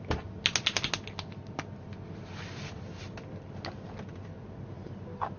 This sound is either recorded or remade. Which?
recorded